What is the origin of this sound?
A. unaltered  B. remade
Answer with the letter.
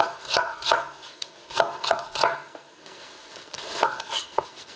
B